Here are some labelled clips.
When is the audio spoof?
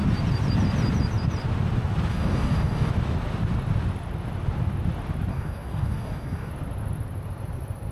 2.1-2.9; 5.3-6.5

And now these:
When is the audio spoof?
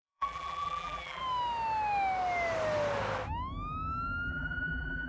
0.0-1.2; 4.3-5.1